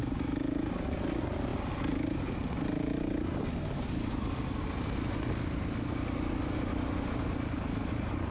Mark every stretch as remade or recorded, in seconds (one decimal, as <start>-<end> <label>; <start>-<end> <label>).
0.0-8.3 recorded